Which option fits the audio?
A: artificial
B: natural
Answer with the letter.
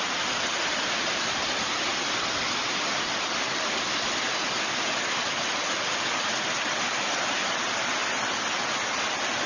B